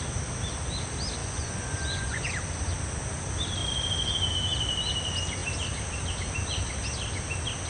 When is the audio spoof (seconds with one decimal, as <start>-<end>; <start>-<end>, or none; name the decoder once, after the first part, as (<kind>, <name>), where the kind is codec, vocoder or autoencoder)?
1.2-2.3 (vocoder, Vocos)